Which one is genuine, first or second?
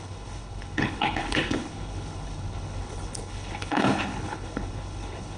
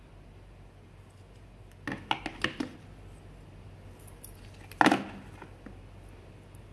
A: second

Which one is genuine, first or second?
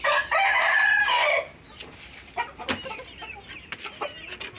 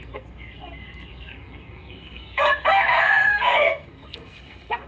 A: first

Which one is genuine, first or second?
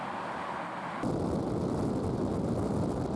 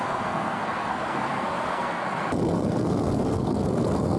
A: first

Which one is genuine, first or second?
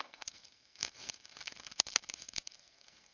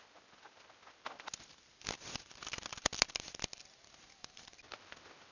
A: second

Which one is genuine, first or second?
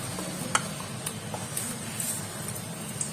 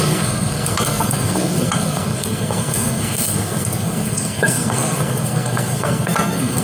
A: first